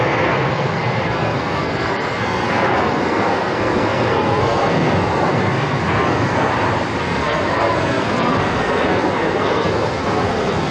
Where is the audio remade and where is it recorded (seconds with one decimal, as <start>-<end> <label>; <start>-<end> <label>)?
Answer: 0.0-6.5 remade; 6.5-7.0 recorded; 7.0-10.7 remade